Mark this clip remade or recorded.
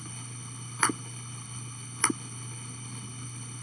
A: remade